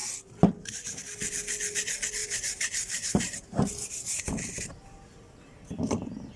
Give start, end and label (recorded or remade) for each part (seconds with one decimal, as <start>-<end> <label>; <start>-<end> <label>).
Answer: 0.0-2.2 recorded; 2.2-4.2 remade; 4.2-6.4 recorded